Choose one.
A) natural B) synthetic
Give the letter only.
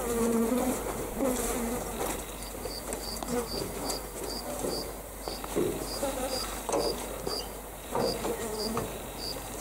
B